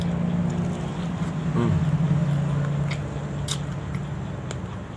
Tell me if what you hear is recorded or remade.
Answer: recorded